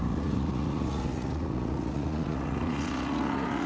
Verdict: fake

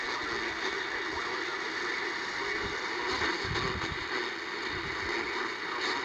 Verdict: real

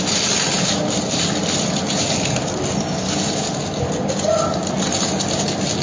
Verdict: real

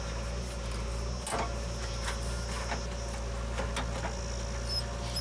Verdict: real